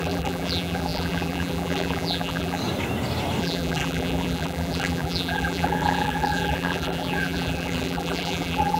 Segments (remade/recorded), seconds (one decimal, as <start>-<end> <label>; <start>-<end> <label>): 0.0-2.6 remade; 2.6-3.4 recorded; 3.4-8.8 remade

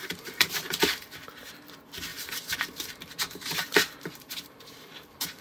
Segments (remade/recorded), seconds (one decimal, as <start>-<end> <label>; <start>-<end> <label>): 0.0-1.5 remade; 1.5-2.1 recorded; 2.1-5.4 remade

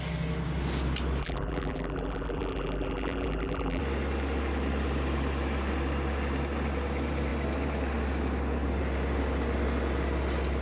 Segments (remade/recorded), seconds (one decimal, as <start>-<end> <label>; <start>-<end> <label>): 0.0-1.2 recorded; 1.2-3.8 remade; 3.8-10.6 recorded

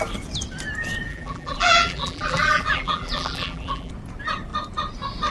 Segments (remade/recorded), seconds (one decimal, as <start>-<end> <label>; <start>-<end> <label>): 0.0-1.1 recorded; 1.1-3.9 remade; 3.9-5.3 recorded

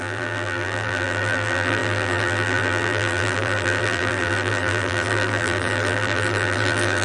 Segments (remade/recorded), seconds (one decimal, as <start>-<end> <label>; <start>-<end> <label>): 0.0-7.0 remade

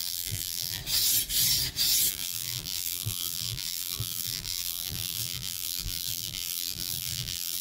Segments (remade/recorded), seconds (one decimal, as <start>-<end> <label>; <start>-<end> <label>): 0.0-0.8 remade; 0.8-2.1 recorded; 2.1-7.6 remade